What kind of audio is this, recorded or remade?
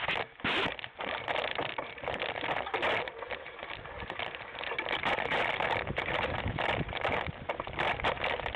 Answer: remade